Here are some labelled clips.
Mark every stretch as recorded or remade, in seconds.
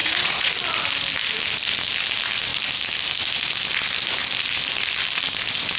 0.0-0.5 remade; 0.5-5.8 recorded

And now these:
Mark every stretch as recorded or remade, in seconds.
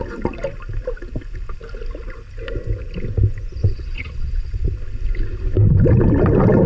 0.0-3.6 recorded; 3.6-4.6 remade; 4.6-6.7 recorded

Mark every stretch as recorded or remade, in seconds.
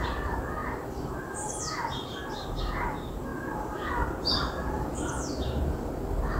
0.0-6.4 recorded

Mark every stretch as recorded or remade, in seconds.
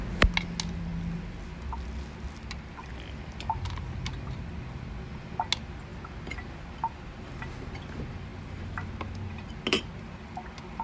0.0-10.8 recorded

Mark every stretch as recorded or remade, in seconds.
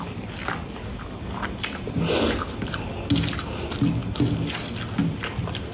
0.0-5.7 recorded